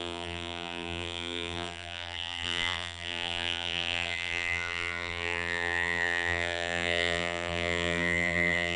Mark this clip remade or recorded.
remade